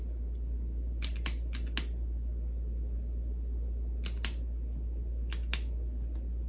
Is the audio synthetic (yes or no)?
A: no